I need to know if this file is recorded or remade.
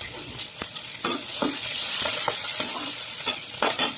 remade